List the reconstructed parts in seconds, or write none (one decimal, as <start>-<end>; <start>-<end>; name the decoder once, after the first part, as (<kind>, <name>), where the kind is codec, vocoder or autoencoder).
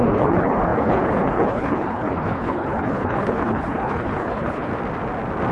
0.0-4.7 (codec, HILCodec)